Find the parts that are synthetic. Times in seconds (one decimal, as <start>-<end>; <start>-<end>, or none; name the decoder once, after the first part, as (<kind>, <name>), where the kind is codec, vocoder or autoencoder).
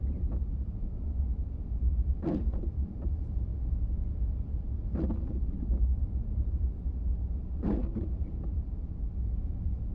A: 0.0-3.5 (vocoder, BigVGAN v2); 5.6-9.9